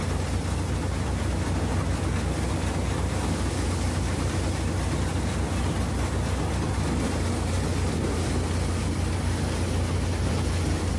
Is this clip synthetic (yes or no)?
no